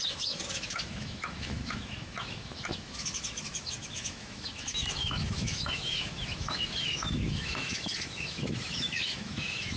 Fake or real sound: fake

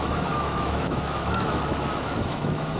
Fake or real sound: fake